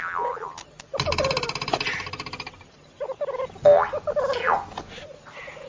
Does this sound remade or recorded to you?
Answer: recorded